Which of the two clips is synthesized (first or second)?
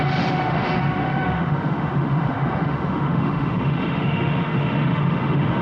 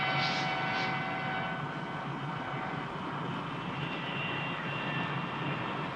first